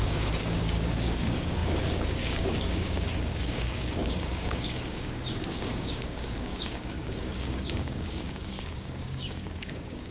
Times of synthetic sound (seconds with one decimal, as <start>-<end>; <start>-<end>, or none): 0.0-10.1